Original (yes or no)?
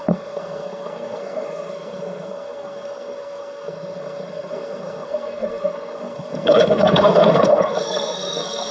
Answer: no